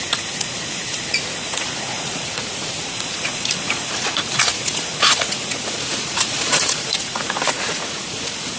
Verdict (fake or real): fake